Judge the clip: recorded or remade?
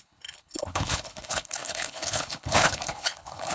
remade